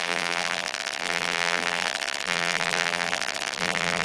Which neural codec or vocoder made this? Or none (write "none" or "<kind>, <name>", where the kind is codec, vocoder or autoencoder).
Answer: vocoder, BigVGAN v2